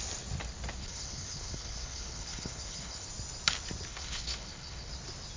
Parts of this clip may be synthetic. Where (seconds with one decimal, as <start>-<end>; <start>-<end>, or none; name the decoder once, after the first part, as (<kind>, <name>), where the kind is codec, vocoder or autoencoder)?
0.8-3.1 (codec, HILCodec); 3.9-4.9